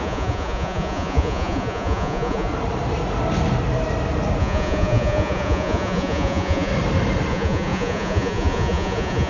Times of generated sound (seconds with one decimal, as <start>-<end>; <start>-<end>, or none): 0.0-2.5; 4.4-6.7; 7.3-9.3